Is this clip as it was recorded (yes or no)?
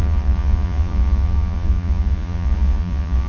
no